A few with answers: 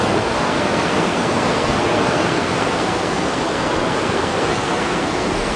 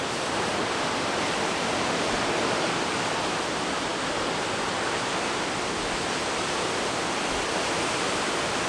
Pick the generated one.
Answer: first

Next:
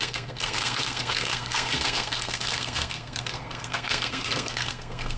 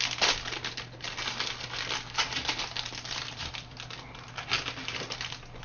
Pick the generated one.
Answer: first